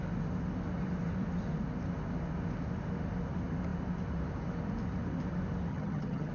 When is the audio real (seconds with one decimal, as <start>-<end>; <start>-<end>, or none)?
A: 0.0-5.7